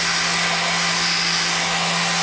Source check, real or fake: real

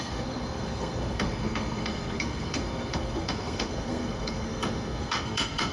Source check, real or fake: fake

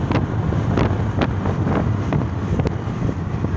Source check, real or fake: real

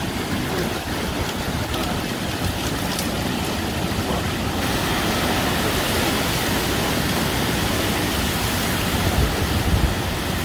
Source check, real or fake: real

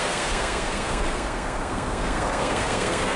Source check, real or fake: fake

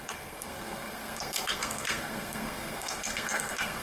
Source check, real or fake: fake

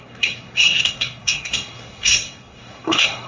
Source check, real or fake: fake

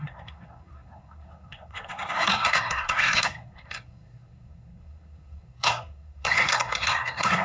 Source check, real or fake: fake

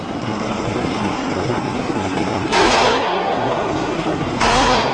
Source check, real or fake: fake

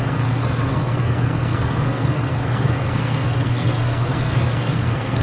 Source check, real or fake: fake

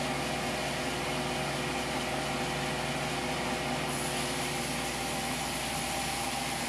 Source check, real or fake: real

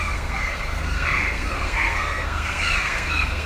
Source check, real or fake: fake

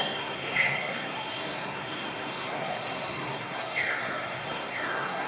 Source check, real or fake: fake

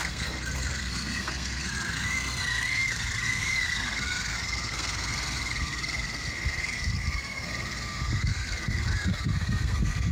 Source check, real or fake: fake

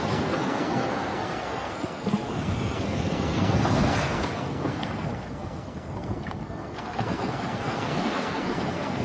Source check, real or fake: fake